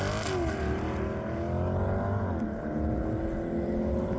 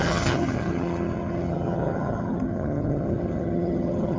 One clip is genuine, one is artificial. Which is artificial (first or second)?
second